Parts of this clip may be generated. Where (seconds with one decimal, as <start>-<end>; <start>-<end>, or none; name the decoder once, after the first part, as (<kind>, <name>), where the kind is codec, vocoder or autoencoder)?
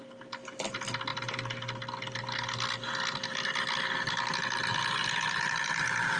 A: none